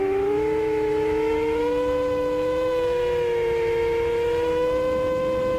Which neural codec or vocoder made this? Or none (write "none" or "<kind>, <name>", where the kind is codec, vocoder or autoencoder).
autoencoder, DAC-VAE